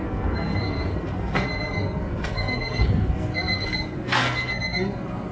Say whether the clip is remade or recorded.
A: remade